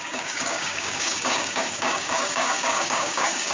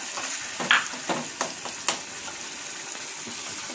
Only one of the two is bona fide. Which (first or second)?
second